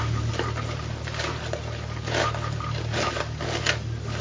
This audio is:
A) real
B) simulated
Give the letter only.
A